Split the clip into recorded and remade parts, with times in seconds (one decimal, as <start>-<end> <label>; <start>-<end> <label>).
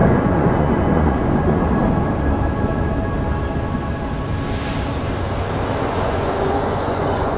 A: 0.0-1.6 remade; 1.6-5.8 recorded; 5.8-7.4 remade